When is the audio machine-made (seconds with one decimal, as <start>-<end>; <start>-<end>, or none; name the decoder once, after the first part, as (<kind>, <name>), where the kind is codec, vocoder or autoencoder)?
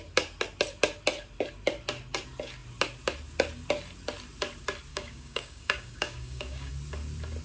4.9-6.7 (codec, DAC)